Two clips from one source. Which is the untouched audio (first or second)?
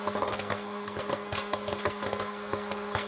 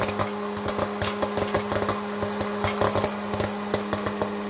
second